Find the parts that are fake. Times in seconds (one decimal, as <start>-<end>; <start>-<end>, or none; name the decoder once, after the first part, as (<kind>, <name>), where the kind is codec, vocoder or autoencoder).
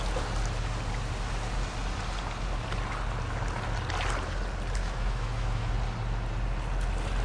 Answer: 4.8-5.7 (autoencoder, DAC-VAE)